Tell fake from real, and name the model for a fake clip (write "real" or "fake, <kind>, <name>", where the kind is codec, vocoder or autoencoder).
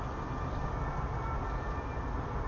real